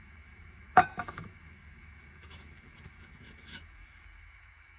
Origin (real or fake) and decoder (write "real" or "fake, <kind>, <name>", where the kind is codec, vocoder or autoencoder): fake, autoencoder, DAC-VAE